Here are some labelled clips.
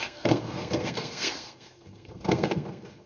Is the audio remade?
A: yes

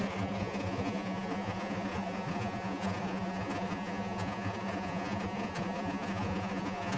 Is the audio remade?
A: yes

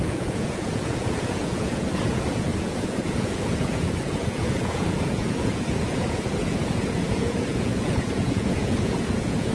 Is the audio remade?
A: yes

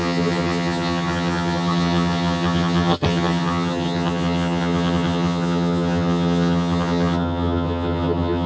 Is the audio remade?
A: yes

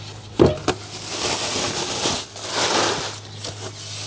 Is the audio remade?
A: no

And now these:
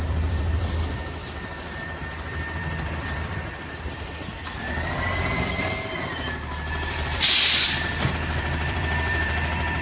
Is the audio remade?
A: yes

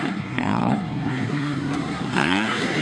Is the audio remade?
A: yes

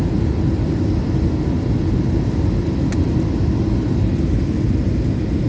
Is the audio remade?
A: no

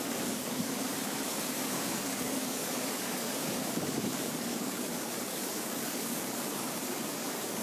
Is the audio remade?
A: yes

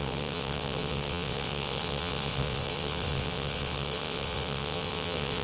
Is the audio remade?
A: yes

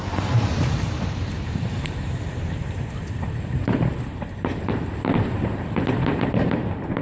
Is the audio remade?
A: yes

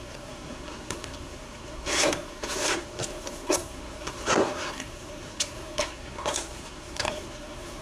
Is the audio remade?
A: yes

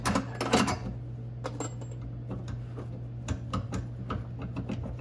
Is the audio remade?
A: no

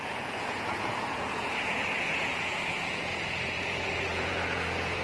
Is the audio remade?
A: yes